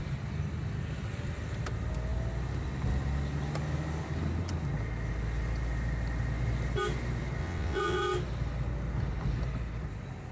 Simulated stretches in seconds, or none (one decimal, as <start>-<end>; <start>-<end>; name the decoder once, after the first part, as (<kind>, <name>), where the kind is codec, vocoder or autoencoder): 7.4-8.1 (vocoder, WaveNeXt)